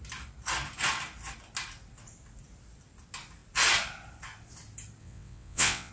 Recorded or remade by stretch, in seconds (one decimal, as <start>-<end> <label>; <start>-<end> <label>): 0.0-5.0 recorded; 5.0-5.9 remade